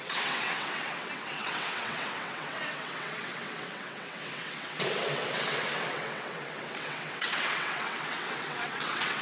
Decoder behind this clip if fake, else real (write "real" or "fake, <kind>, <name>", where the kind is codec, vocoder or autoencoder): fake, vocoder, WaveNeXt